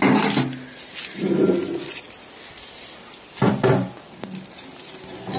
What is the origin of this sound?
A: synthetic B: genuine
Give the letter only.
B